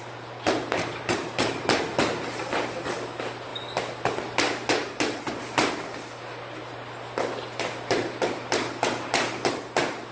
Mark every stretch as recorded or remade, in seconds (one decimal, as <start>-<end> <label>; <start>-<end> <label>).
0.0-10.1 recorded